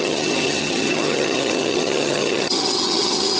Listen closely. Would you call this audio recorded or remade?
remade